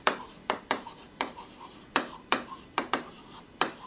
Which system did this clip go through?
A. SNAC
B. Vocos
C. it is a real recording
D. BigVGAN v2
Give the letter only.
D